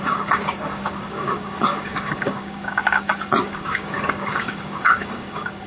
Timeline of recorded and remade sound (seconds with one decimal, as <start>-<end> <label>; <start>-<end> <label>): 0.0-5.7 remade